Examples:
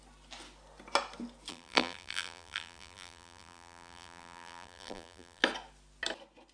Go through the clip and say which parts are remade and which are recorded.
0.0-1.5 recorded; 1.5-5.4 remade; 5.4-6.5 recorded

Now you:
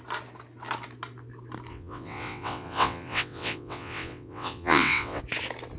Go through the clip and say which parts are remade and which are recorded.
0.0-1.7 recorded; 1.7-5.2 remade; 5.2-5.8 recorded

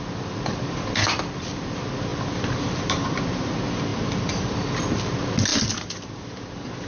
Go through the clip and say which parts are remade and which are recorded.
0.0-2.1 recorded; 2.1-3.2 remade; 3.2-3.9 recorded; 3.9-4.5 remade; 4.5-5.5 recorded; 5.5-6.9 remade